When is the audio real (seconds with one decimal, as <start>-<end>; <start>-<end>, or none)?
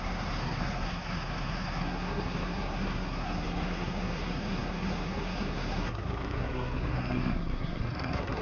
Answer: none